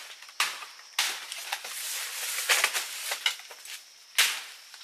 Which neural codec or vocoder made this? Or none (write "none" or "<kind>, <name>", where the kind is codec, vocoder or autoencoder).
none